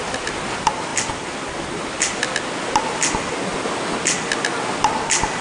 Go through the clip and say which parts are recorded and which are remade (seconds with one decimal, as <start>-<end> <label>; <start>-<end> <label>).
0.0-5.4 recorded